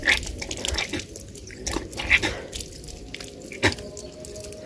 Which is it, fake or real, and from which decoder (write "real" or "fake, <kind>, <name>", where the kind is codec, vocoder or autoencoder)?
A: real